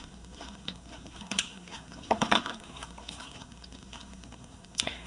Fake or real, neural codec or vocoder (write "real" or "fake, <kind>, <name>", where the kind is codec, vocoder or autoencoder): fake, codec, SNAC